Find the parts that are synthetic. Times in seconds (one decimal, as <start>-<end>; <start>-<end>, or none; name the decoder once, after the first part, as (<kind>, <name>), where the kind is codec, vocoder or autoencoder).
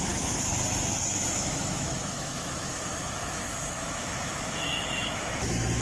0.0-0.5 (autoencoder, DAC-VAE); 1.1-5.8